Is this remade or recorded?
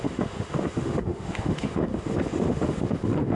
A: remade